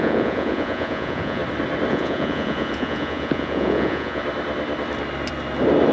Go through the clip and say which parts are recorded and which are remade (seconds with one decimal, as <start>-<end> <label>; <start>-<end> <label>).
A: 0.0-1.4 remade; 1.4-1.9 recorded; 1.9-4.2 remade; 4.2-5.9 recorded